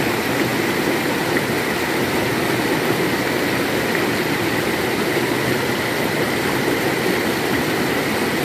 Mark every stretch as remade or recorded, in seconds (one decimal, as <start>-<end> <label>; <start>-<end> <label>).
0.0-8.4 recorded